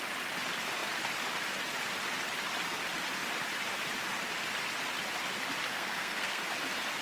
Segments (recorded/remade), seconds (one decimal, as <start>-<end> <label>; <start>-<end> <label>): 0.0-5.7 recorded; 5.7-6.4 remade; 6.4-7.0 recorded